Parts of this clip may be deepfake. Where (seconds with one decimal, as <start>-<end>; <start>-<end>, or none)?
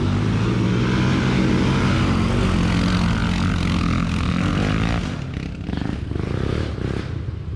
none